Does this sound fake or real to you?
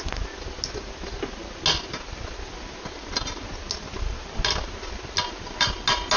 real